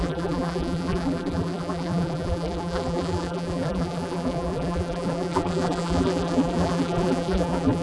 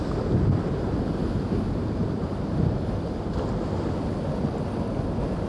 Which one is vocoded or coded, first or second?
first